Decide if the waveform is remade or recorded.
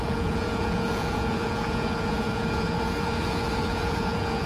remade